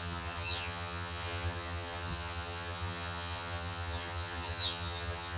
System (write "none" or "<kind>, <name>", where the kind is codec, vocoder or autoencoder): vocoder, HiFi-GAN